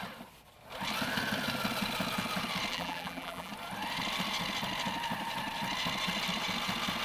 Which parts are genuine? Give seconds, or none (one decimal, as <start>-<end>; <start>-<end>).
0.0-2.7; 3.5-7.0